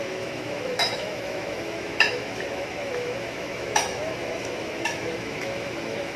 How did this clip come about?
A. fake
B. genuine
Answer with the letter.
A